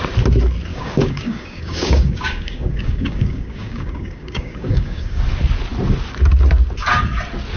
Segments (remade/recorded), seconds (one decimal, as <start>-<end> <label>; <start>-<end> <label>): 0.0-0.7 recorded; 0.7-5.2 remade; 5.2-7.6 recorded